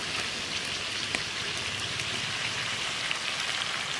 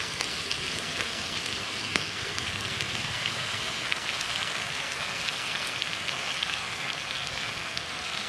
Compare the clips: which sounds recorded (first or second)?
first